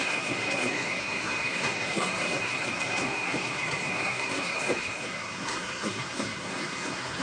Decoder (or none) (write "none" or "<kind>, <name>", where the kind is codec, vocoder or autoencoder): codec, SNAC